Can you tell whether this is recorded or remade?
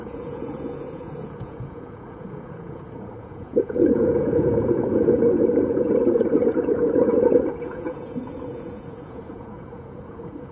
remade